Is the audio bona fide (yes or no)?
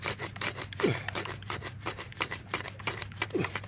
no